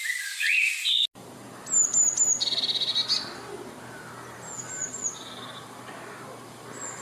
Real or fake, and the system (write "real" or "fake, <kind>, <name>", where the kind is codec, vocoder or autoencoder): real